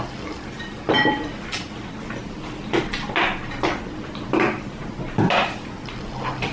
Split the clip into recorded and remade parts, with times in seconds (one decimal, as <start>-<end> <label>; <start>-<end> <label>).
0.0-6.5 recorded